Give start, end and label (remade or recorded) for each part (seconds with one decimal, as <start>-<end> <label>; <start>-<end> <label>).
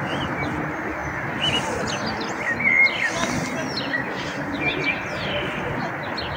0.0-6.4 recorded